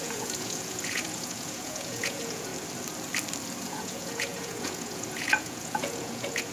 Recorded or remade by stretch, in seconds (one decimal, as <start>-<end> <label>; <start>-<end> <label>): 0.0-2.5 remade; 2.5-3.6 recorded; 3.6-6.5 remade